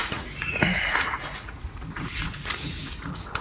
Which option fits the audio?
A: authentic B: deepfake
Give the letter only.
B